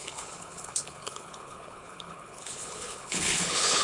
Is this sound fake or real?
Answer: fake